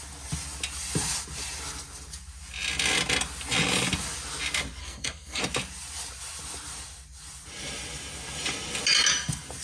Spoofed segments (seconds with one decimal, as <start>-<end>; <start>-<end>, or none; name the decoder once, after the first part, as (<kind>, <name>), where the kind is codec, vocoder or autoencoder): 4.8-5.4 (codec, SNAC)